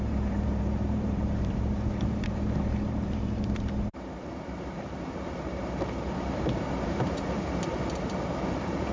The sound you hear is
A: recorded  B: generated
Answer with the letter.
B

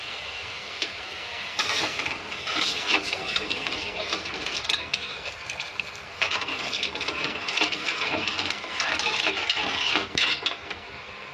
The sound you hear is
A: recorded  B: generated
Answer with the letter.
B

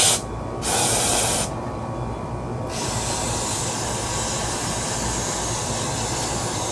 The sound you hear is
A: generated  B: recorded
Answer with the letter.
B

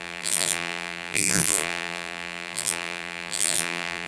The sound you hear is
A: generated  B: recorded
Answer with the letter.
A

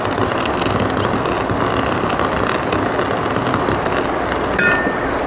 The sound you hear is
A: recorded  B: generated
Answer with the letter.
A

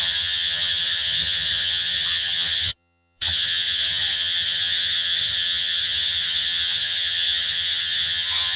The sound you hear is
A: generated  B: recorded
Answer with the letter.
A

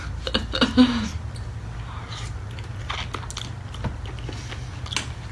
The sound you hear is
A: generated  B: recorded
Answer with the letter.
B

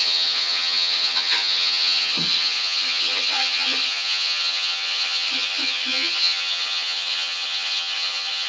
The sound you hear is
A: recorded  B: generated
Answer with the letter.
B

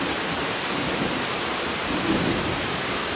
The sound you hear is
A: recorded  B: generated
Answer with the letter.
B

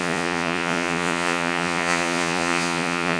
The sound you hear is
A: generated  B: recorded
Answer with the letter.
A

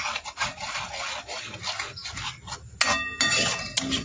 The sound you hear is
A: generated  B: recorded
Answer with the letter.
B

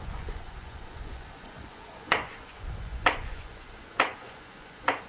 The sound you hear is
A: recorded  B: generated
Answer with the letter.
B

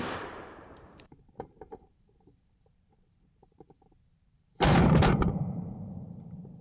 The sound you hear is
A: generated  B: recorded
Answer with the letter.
A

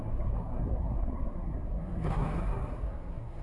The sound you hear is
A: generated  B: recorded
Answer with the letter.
A